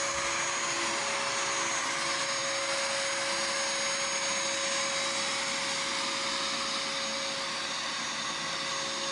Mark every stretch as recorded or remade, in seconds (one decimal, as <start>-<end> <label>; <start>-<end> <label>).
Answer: 0.0-9.1 recorded